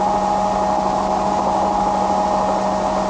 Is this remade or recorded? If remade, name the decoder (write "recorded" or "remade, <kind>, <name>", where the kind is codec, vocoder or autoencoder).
recorded